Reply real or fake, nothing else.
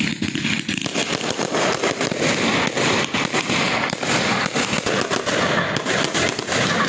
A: real